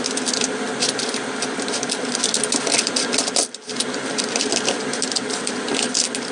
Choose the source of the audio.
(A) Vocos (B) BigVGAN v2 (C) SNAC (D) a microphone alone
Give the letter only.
D